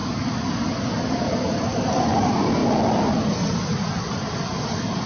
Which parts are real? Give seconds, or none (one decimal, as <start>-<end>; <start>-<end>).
1.3-5.1